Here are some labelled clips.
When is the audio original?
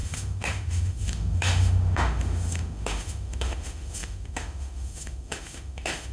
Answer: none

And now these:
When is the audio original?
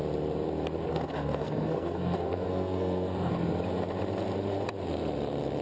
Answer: 0.0-0.9; 3.3-5.6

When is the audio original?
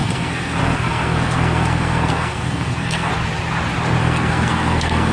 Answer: 3.1-4.0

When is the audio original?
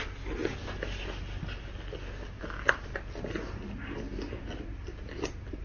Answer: 0.0-5.6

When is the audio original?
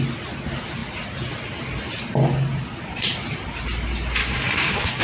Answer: 0.0-4.2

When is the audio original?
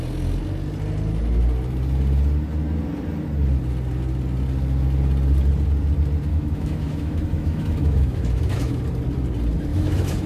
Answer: 0.0-6.3; 8.8-9.7